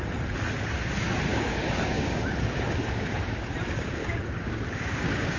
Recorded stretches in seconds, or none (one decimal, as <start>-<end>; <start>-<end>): 0.0-1.3; 3.2-4.0